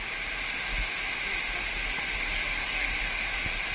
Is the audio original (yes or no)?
yes